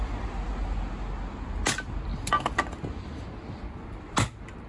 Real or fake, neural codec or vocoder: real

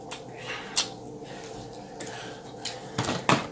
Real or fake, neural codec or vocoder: real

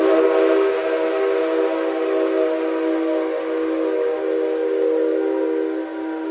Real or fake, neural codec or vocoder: real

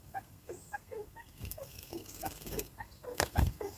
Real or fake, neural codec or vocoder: fake, codec, SNAC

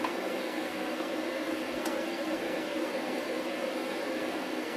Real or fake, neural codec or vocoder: fake, codec, SNAC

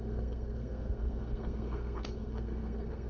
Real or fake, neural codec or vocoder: fake, codec, SNAC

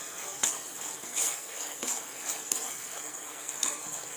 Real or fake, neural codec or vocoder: fake, codec, SNAC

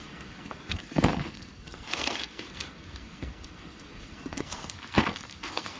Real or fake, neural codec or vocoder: fake, codec, SNAC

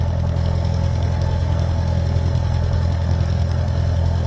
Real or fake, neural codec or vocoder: fake, codec, SNAC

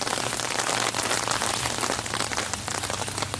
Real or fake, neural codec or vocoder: real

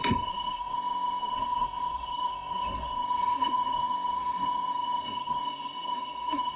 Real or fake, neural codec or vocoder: fake, codec, SNAC